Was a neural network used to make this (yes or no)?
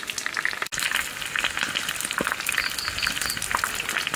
no